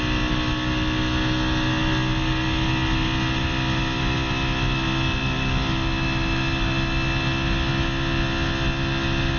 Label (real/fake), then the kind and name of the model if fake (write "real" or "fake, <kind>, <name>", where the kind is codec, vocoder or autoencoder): real